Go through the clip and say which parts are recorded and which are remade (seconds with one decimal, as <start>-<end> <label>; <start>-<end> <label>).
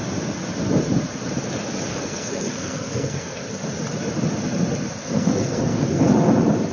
0.0-1.9 recorded; 1.9-3.4 remade; 3.4-5.0 recorded; 5.0-6.1 remade; 6.1-6.7 recorded